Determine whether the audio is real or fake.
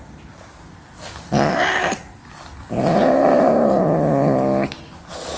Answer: real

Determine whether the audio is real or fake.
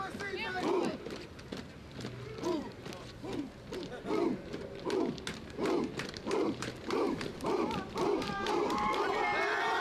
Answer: real